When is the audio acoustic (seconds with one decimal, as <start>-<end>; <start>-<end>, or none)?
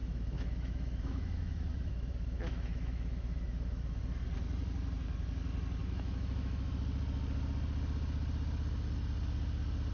4.0-5.8; 6.7-9.9